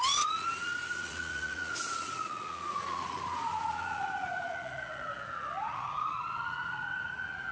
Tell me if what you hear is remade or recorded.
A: remade